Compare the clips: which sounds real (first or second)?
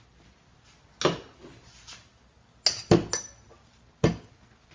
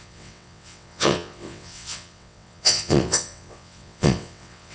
first